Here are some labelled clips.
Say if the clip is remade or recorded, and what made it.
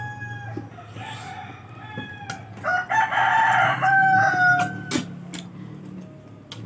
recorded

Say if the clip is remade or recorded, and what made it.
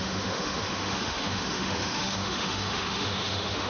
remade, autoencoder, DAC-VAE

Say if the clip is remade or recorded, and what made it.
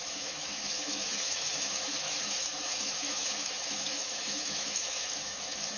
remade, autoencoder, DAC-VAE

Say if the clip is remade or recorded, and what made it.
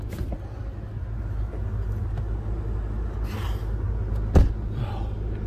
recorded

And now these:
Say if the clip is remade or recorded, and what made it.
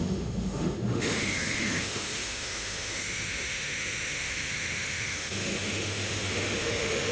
remade, autoencoder, DAC-VAE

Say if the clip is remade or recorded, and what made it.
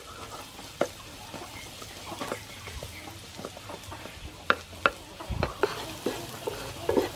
recorded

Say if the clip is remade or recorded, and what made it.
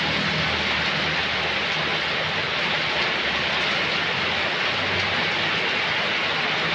recorded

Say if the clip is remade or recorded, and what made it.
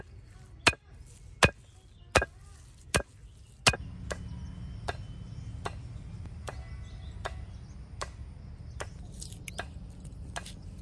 recorded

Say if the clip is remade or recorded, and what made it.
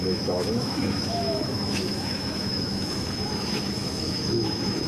remade, autoencoder, DAC-VAE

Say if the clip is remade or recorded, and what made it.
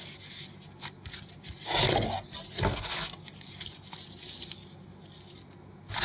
recorded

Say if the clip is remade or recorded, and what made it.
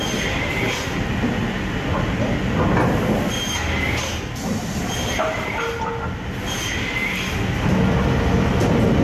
recorded